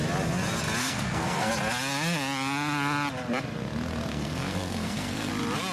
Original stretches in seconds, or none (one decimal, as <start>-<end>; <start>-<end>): 0.0-0.8; 1.5-4.1; 5.3-5.7